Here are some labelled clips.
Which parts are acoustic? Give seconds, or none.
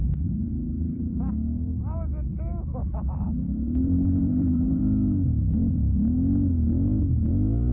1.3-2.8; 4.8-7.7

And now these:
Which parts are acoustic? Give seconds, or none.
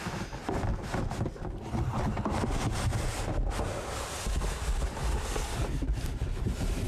0.0-6.9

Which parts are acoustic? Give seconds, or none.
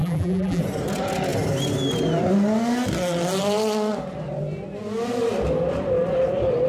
0.6-6.7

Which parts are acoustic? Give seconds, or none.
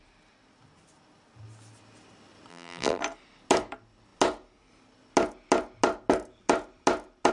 0.0-2.5; 3.0-7.3